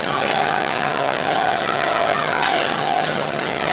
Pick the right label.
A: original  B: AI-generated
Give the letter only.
B